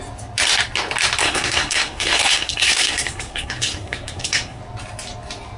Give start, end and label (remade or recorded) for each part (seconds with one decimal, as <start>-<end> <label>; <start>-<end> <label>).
0.0-1.2 recorded; 1.2-4.6 remade; 4.6-5.6 recorded